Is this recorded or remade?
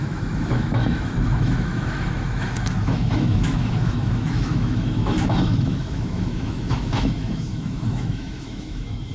remade